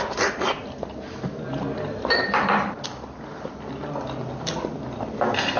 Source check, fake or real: real